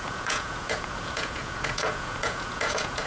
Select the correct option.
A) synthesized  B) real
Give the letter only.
A